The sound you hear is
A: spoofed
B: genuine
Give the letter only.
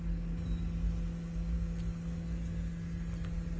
B